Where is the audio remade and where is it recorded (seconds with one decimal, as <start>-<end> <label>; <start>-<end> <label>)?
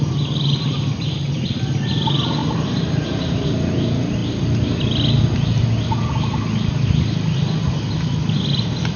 0.0-2.4 recorded; 2.4-3.5 remade; 3.5-9.0 recorded